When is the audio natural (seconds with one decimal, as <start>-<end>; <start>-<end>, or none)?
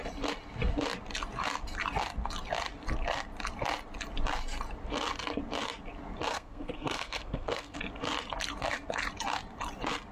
0.0-6.3; 7.8-10.1